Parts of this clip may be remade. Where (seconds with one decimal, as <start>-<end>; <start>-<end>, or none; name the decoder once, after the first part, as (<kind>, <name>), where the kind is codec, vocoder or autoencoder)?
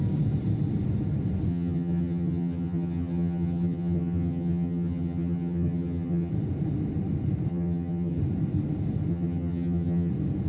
1.5-6.3 (vocoder, HiFi-GAN); 7.5-8.2; 9.1-10.1